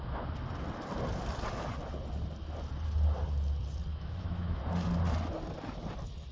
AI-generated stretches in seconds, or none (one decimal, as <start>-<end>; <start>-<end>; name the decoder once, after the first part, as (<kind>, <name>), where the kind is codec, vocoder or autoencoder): 3.9-4.6 (autoencoder, DAC-VAE)

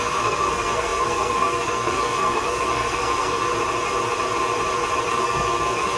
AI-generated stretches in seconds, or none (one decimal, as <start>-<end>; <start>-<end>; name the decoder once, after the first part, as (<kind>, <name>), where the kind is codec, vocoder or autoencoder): 0.0-3.5 (codec, SNAC); 5.1-6.0

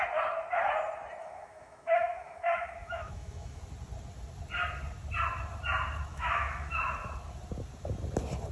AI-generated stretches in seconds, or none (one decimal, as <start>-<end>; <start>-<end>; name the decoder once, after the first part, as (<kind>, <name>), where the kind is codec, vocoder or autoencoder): 1.2-3.6 (autoencoder, DAC-VAE); 6.1-6.8

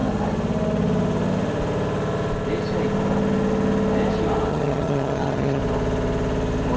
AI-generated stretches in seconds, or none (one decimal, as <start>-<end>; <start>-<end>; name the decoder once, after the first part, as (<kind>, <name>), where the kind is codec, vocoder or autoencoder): 4.5-5.6 (vocoder, HiFi-GAN)

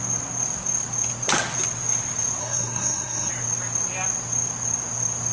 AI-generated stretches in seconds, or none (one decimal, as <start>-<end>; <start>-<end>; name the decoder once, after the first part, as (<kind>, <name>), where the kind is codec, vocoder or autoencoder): 2.4-3.3 (codec, SNAC)

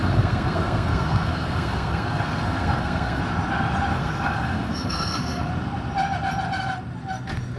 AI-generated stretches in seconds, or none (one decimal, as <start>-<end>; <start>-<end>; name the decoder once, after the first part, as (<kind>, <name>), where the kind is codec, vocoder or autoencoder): 0.0-3.2 (codec, SNAC); 3.9-5.5

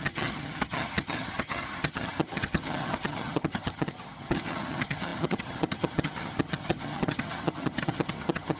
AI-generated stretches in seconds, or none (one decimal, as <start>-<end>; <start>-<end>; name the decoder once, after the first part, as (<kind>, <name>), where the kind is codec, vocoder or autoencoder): 0.0-8.6 (vocoder, HiFi-GAN)

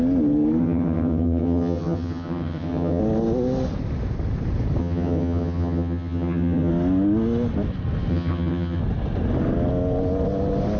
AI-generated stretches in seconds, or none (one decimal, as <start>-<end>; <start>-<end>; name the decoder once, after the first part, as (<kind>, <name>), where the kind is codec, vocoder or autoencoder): 0.6-3.0 (vocoder, HiFi-GAN); 4.8-6.7; 8.1-8.8